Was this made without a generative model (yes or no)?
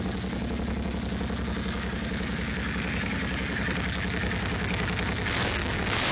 no